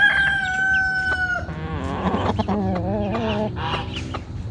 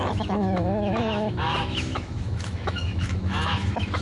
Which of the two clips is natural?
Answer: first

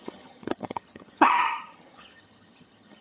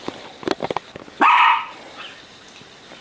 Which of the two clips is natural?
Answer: second